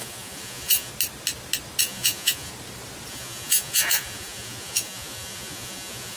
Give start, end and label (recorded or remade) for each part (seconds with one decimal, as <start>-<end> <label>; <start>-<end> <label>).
0.0-0.9 remade; 0.9-1.8 recorded; 1.8-2.5 remade; 2.5-3.1 recorded; 3.1-6.2 remade